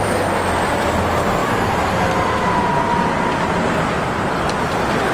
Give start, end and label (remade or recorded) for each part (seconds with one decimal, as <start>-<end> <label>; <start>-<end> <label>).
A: 0.0-5.1 recorded